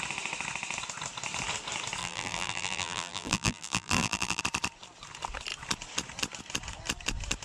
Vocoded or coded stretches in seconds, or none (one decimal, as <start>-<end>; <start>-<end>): 2.0-4.4